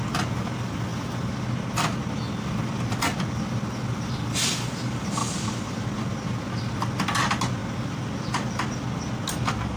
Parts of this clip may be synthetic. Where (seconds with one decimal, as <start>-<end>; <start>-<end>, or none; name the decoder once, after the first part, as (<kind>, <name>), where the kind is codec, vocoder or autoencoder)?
none